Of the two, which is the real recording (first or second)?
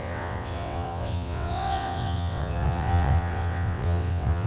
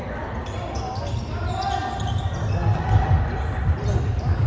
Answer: second